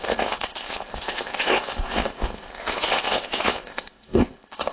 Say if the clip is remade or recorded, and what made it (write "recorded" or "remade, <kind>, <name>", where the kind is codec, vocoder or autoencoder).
remade, codec, ZipCodec